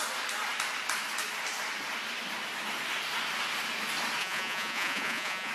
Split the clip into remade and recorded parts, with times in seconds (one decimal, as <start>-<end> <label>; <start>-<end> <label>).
0.0-4.2 recorded; 4.2-5.5 remade